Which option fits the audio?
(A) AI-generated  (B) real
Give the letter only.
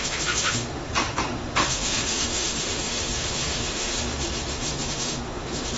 A